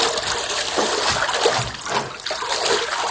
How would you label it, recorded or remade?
recorded